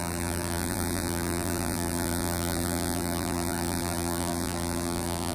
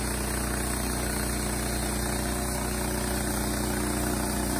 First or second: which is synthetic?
first